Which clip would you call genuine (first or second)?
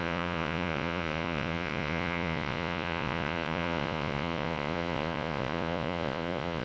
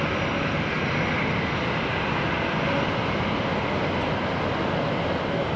second